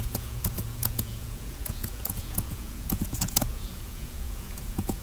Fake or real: fake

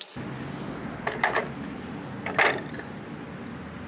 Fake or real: real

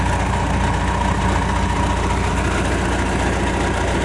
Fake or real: real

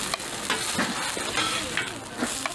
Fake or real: real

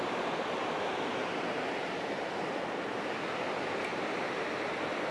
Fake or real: real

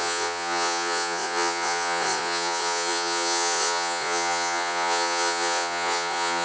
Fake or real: fake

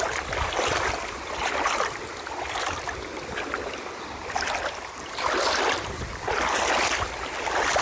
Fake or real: real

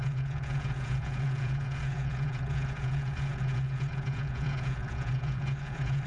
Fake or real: fake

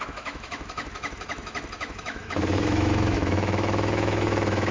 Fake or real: fake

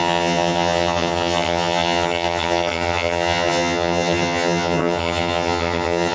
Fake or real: fake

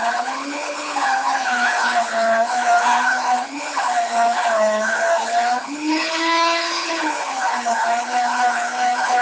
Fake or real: fake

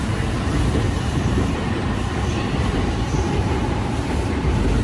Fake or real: fake